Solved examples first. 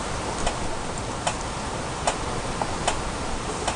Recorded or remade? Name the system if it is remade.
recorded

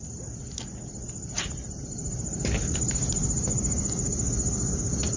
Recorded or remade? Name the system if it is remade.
recorded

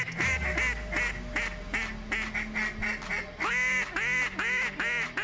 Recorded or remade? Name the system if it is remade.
recorded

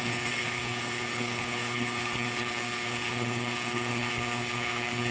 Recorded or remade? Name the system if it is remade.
remade, codec, HILCodec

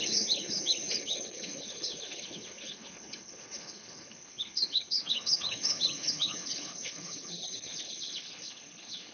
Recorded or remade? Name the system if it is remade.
remade, codec, HILCodec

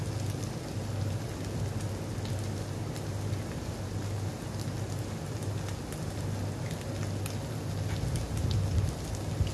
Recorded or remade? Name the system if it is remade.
recorded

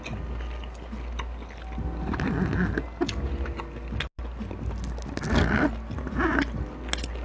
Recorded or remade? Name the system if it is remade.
recorded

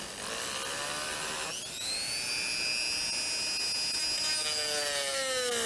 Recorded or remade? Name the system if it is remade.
recorded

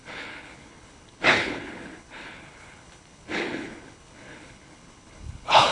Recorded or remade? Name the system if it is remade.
remade, codec, HILCodec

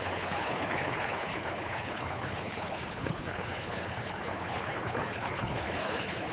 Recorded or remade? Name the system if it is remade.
remade, codec, HILCodec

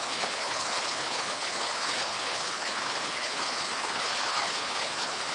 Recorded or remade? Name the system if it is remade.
remade, codec, HILCodec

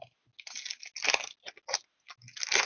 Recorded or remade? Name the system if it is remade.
recorded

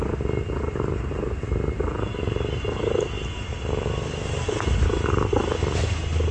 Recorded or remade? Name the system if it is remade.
recorded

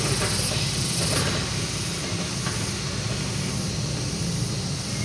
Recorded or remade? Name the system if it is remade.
recorded